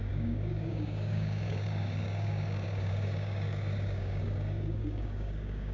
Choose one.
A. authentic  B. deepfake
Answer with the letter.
B